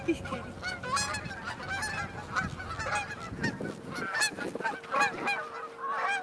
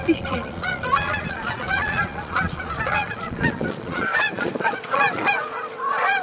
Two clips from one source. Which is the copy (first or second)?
second